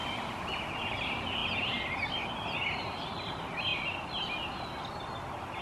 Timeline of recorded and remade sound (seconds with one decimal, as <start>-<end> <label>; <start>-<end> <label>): 0.0-5.6 recorded